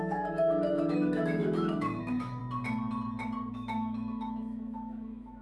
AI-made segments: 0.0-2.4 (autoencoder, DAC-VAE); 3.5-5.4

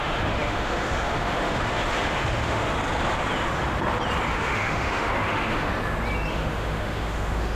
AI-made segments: 0.0-2.7 (autoencoder, DAC-VAE); 4.3-5.7; 6.3-7.5

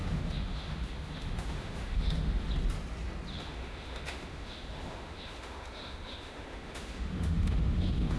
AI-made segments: 0.0-2.5 (autoencoder, DAC-VAE); 3.3-8.2

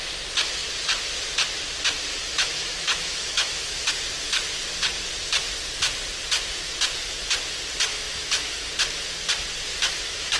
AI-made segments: 2.1-3.9 (autoencoder, DAC-VAE); 7.9-8.7; 9.7-10.4

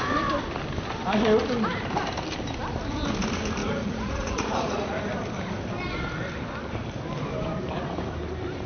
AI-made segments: 3.6-5.0 (vocoder, Vocos)